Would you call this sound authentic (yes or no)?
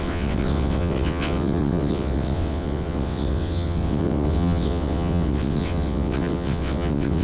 no